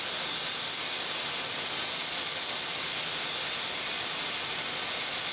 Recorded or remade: recorded